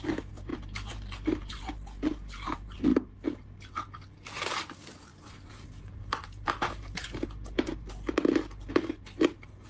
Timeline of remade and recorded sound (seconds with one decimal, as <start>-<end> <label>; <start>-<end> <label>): 0.0-0.5 recorded; 0.5-1.7 remade; 1.7-5.1 recorded; 5.1-7.9 remade; 7.9-9.7 recorded